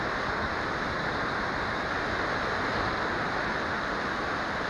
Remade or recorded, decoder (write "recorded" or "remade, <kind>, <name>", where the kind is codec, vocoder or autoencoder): recorded